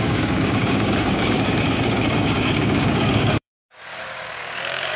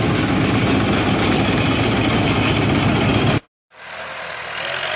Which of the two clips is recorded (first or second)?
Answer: second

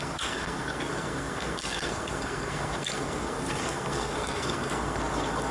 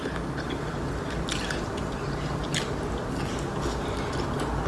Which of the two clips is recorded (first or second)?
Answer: second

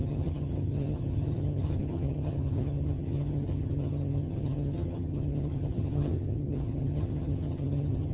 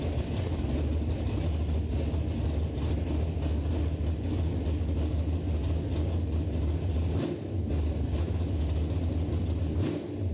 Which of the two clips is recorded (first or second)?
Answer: second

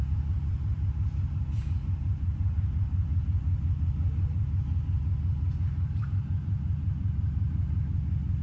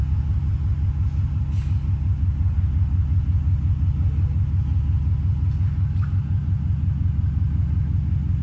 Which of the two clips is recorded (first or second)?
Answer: second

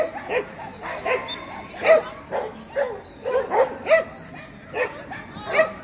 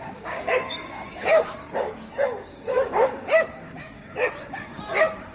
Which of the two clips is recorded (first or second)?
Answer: first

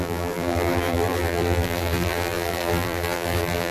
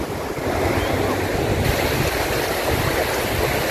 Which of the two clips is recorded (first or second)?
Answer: second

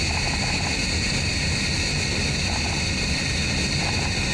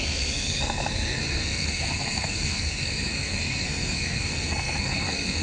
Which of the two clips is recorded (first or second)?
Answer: first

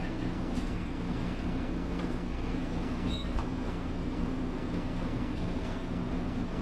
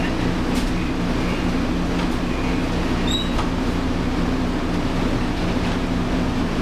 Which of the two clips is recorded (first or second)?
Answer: second